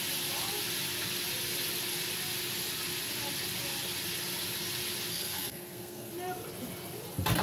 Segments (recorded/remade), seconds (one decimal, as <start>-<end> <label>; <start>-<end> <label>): 0.0-5.1 recorded; 5.1-6.1 remade; 6.1-7.4 recorded

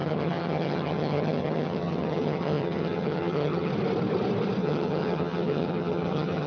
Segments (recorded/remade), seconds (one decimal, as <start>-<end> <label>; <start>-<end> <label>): 0.0-3.7 remade; 3.7-4.6 recorded; 4.6-6.5 remade

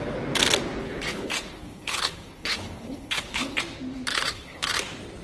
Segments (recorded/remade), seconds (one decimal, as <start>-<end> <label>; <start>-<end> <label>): 0.0-0.8 recorded; 0.8-3.6 remade; 3.6-4.1 recorded; 4.1-4.7 remade; 4.7-5.2 recorded

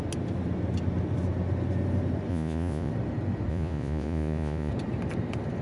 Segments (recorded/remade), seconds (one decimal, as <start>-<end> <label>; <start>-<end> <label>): 0.0-2.3 recorded; 2.3-2.9 remade; 2.9-3.5 recorded; 3.5-4.7 remade; 4.7-5.6 recorded

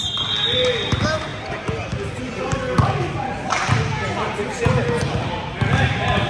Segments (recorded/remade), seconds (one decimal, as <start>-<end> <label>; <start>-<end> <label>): 0.0-6.3 recorded